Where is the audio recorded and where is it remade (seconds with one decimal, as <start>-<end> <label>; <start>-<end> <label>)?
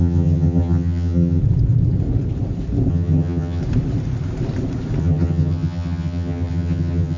0.0-1.4 remade; 1.4-2.9 recorded; 2.9-3.6 remade; 3.6-5.0 recorded; 5.0-7.2 remade